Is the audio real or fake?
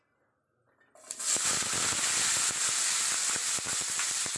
real